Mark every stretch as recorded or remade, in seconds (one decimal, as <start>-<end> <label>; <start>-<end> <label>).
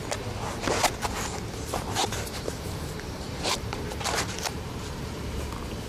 0.0-2.0 recorded; 2.0-5.5 remade; 5.5-5.9 recorded